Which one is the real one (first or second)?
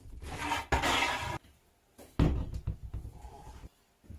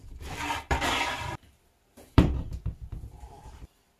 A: first